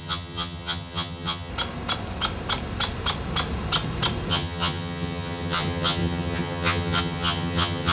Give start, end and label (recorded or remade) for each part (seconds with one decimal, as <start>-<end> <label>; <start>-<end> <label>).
0.0-1.5 remade; 1.5-4.3 recorded; 4.3-7.9 remade